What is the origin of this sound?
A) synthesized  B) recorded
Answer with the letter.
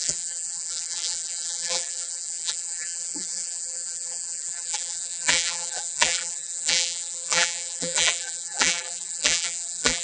A